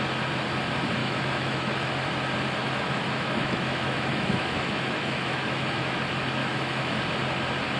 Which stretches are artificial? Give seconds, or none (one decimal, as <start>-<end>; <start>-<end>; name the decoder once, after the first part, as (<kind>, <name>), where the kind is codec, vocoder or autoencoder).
1.0-1.9 (autoencoder, DAC-VAE); 2.6-6.0; 6.4-7.0